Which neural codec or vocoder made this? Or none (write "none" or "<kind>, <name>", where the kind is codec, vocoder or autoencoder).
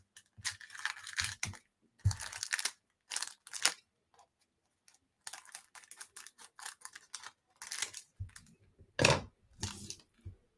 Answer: none